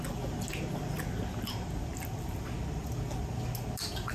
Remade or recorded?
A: recorded